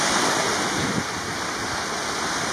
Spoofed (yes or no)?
no